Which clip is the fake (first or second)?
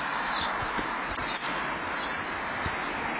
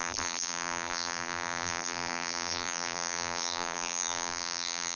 second